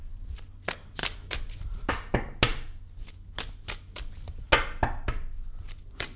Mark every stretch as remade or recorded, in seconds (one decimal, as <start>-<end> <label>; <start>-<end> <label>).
0.0-6.2 recorded